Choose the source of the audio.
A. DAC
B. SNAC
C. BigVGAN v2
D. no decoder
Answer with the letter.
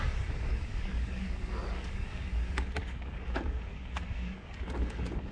A